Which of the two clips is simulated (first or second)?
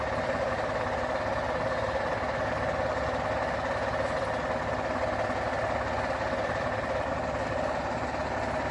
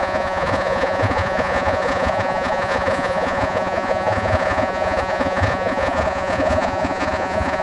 second